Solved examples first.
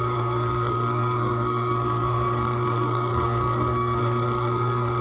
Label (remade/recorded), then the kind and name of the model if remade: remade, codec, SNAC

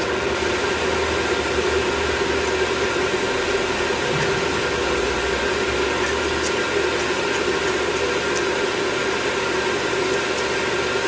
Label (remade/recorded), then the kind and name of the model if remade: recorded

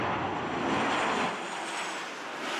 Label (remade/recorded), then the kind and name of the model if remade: recorded